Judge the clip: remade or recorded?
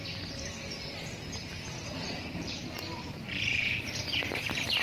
remade